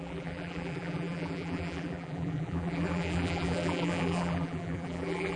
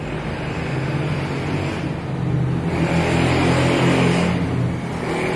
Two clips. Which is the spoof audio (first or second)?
first